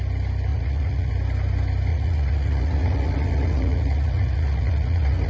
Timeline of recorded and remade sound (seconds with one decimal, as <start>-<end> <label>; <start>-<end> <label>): 0.0-0.5 recorded; 0.5-1.1 remade; 1.1-1.9 recorded; 1.9-5.3 remade